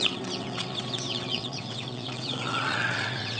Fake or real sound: fake